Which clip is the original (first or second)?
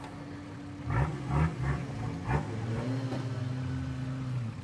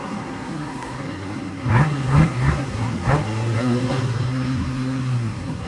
first